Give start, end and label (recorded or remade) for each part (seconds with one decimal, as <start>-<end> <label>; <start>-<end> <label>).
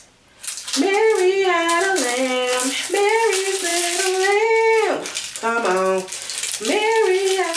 0.0-7.6 recorded